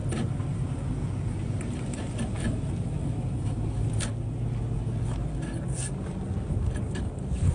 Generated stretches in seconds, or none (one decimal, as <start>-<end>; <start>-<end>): none